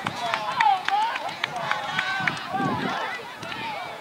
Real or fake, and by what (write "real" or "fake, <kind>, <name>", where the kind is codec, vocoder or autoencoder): fake, vocoder, Vocos